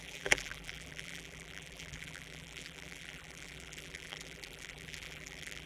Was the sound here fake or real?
fake